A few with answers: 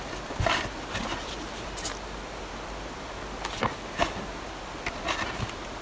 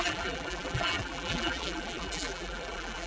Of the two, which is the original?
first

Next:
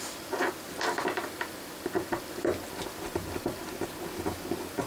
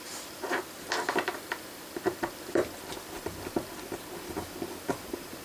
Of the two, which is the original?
first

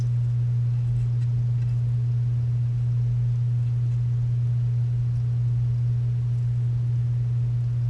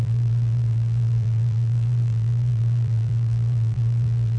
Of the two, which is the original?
first